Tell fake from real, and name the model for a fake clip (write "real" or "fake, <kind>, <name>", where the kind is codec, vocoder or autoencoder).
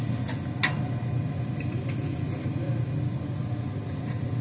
real